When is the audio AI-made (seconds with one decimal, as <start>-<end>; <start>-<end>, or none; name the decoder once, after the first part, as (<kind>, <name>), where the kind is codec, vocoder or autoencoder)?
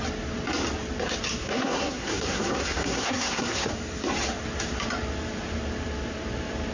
1.4-3.7 (codec, SNAC)